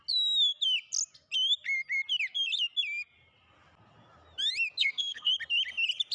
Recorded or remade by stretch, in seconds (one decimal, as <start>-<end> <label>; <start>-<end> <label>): 0.0-4.8 recorded; 4.8-5.3 remade; 5.3-6.1 recorded